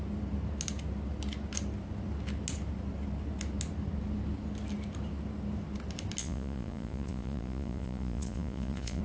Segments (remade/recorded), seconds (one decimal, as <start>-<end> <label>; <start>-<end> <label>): 0.0-6.2 recorded; 6.2-9.0 remade